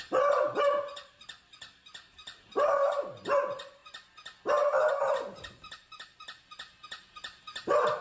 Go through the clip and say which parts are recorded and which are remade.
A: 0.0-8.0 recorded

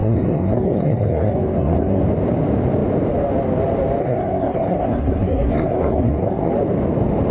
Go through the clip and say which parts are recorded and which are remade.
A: 0.0-2.0 remade; 2.0-4.0 recorded; 4.0-6.5 remade; 6.5-7.3 recorded

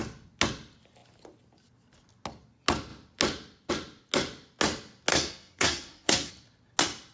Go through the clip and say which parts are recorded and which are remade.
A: 0.0-5.1 recorded; 5.1-6.3 remade; 6.3-7.1 recorded

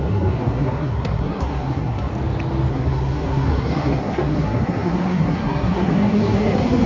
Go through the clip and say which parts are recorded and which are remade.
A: 0.0-2.1 remade; 2.1-2.7 recorded; 2.7-6.9 remade